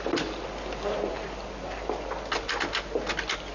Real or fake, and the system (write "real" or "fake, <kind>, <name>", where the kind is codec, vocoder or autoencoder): real